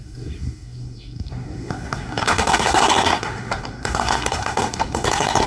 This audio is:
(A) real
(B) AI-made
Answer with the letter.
B